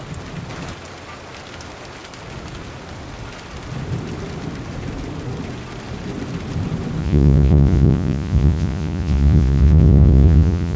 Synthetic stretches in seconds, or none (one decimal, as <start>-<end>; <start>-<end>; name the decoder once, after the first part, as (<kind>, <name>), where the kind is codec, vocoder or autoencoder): 7.0-10.8 (vocoder, Vocos)